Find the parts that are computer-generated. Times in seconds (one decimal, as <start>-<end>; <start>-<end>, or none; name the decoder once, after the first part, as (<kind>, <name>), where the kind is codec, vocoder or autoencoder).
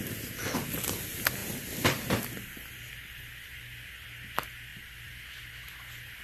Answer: 4.7-5.4 (vocoder, BigVGAN v2)